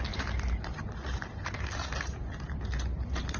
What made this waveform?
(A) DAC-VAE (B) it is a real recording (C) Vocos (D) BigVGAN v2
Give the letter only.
B